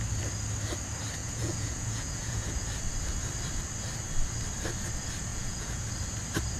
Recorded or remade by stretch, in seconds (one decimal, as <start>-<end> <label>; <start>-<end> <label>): 0.0-1.2 recorded; 1.2-2.6 remade; 2.6-5.3 recorded; 5.3-5.9 remade; 5.9-6.6 recorded